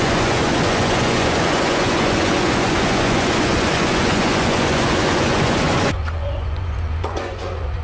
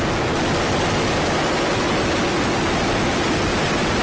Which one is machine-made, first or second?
first